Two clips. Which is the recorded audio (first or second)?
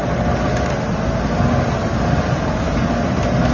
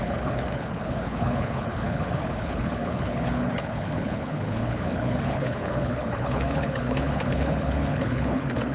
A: first